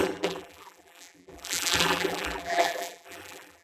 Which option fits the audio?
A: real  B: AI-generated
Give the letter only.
B